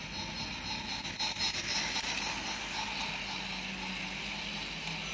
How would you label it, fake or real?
real